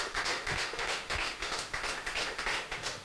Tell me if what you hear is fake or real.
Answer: fake